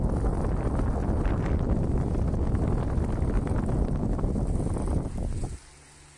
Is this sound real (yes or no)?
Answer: yes